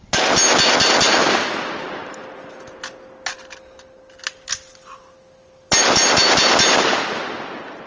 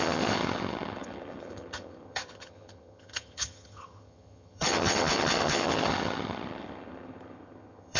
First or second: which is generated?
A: second